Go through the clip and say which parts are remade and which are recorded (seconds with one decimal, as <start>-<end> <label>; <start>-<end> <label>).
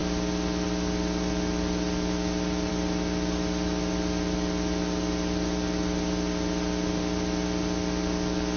0.0-8.6 recorded